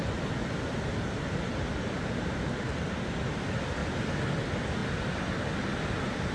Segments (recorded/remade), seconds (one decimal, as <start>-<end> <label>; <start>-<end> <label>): 0.0-6.3 recorded